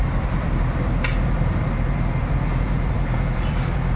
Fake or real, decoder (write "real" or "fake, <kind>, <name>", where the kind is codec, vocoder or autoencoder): fake, vocoder, BigVGAN v2